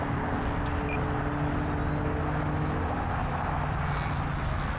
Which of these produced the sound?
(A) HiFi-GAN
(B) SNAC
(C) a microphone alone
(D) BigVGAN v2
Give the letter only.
C